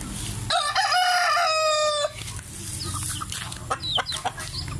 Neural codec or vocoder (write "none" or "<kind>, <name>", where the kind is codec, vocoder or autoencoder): none